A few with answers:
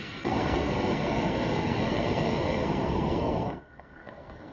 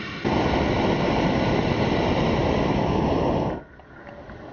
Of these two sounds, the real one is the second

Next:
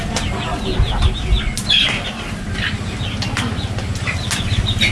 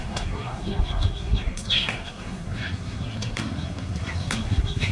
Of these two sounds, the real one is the first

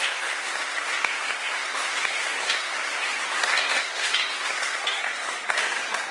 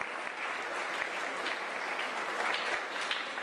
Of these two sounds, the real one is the second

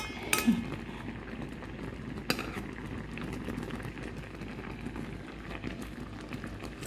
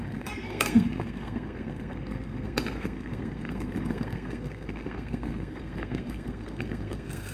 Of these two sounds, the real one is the first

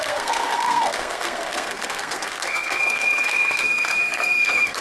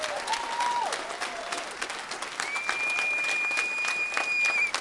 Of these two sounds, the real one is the second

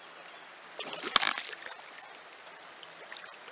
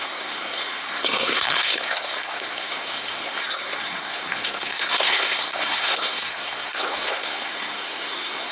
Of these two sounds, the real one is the first